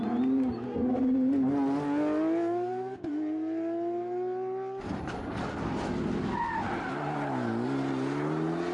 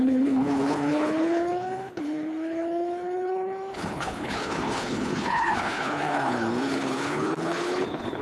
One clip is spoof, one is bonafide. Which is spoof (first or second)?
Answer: second